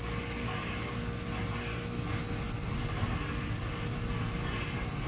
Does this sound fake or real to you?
real